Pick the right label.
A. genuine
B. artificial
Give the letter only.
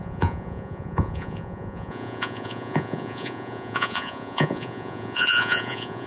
B